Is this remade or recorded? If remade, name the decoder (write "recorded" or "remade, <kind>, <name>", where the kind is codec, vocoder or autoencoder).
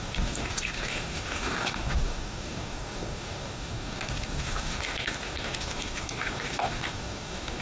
remade, codec, DAC